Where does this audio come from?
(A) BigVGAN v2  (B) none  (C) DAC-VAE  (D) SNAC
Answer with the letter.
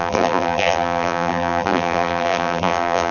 A